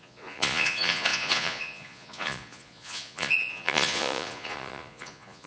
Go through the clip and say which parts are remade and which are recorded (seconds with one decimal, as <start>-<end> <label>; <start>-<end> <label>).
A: 0.0-5.5 remade